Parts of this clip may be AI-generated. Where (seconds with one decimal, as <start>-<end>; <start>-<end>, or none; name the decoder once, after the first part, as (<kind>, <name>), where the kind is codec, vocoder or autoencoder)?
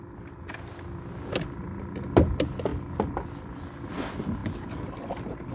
none